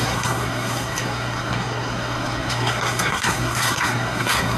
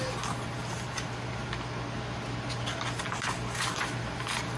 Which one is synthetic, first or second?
first